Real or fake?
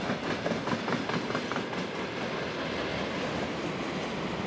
real